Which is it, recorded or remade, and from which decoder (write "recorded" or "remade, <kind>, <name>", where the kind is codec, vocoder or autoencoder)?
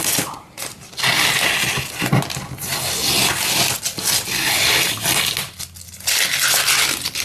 recorded